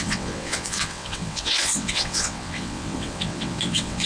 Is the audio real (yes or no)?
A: no